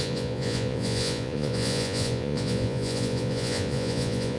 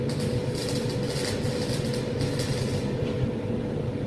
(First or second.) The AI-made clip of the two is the first